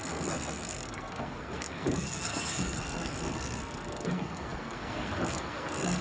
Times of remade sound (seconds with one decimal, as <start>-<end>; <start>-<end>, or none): 0.0-6.0